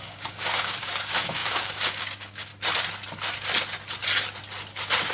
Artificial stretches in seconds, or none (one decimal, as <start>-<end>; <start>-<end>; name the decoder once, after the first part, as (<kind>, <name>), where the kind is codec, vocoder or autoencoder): 0.0-2.5 (codec, DAC)